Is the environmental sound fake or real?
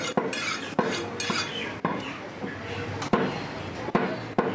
real